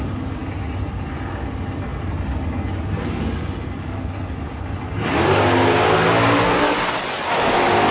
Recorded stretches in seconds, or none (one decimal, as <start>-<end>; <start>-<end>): 0.0-7.9